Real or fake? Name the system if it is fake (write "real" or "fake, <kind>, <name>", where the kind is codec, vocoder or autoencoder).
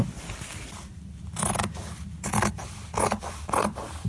real